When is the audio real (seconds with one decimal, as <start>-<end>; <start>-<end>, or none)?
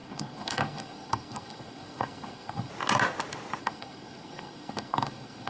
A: 2.7-3.6